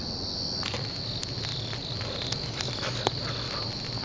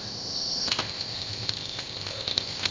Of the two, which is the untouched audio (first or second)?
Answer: first